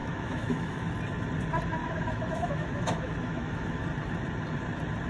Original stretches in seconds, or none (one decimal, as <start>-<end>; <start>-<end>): 0.9-1.8; 3.8-5.1